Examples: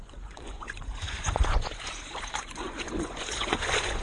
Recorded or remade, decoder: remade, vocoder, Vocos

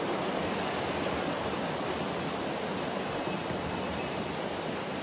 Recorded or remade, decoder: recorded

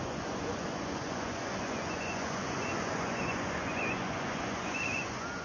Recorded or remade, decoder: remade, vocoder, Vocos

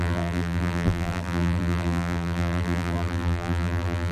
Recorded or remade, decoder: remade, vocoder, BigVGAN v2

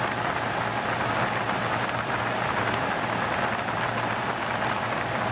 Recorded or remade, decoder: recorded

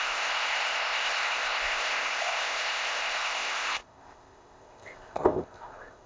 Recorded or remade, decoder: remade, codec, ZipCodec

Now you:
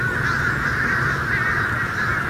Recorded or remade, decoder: recorded